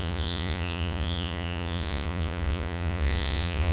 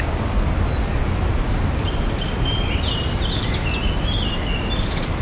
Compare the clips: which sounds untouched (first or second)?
second